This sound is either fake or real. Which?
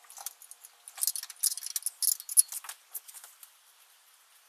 real